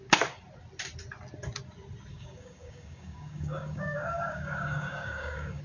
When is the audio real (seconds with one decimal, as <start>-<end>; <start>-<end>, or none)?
0.0-2.1